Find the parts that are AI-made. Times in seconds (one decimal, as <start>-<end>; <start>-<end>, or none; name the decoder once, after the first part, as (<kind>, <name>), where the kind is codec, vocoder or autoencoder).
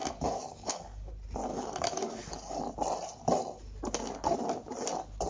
0.0-1.1 (codec, DAC); 1.5-2.6